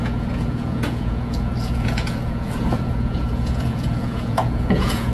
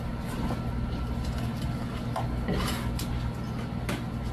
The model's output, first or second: first